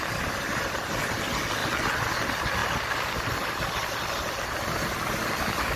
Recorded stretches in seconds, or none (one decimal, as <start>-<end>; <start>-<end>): 0.0-2.6; 4.3-5.8